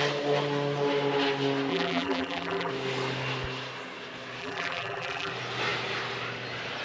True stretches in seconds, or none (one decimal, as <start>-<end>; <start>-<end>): 0.0-1.7; 2.7-4.4; 5.3-6.8